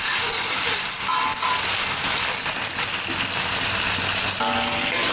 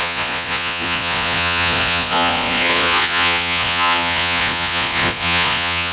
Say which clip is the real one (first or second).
first